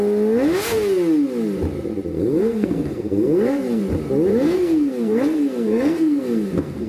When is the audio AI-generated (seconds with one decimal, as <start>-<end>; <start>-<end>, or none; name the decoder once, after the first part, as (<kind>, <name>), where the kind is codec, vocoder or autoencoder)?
2.1-3.8 (codec, SNAC); 4.3-6.9